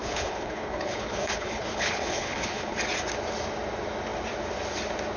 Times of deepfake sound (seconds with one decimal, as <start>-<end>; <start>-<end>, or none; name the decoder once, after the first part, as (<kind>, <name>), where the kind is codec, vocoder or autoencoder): 0.0-2.8 (codec, HILCodec)